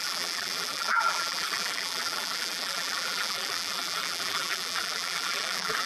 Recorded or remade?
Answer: remade